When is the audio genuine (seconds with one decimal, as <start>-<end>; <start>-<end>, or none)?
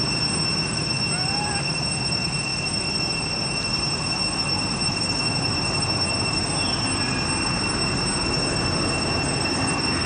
0.0-10.1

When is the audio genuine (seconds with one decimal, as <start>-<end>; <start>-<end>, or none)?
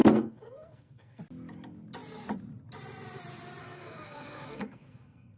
1.2-3.6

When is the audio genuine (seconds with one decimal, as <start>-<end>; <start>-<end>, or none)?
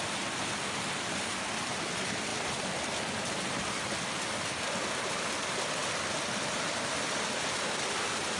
0.0-8.4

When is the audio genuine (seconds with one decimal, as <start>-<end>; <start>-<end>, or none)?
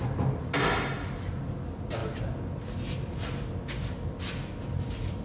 0.0-5.2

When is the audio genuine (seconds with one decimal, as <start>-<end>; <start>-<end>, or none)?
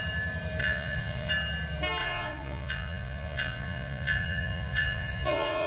0.0-0.6; 1.3-2.0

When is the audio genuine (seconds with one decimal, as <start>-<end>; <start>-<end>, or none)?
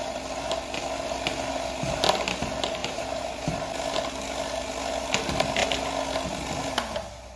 0.0-2.8; 3.5-7.4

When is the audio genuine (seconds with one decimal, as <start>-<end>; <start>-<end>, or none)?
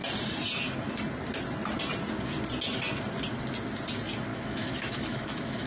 0.0-4.3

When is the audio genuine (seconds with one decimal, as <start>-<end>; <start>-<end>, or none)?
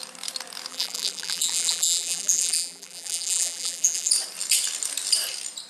0.0-0.7; 4.1-5.7